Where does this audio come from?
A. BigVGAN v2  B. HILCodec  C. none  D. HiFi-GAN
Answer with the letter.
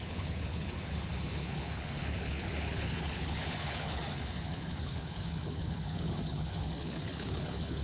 B